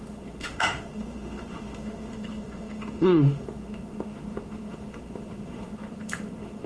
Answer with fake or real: fake